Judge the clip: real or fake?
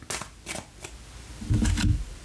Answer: real